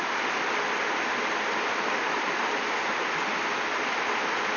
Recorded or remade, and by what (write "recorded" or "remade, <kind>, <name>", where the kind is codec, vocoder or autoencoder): recorded